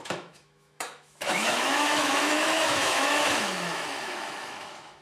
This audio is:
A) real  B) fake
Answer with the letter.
B